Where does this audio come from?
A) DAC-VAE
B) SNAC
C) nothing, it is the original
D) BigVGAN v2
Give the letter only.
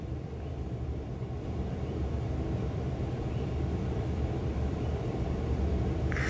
D